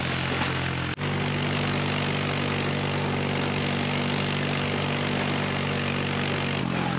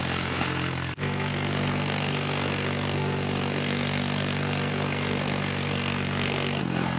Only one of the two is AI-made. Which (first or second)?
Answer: second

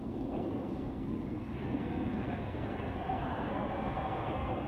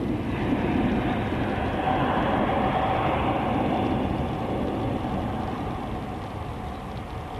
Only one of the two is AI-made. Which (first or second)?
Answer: first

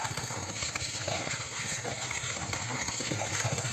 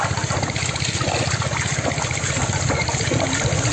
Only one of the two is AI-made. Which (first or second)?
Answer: first